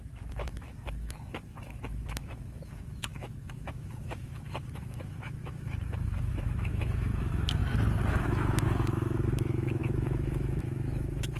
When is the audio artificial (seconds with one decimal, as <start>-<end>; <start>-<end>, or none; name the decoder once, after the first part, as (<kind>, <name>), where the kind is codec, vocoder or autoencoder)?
0.0-7.6 (autoencoder, DAC-VAE); 8.1-11.4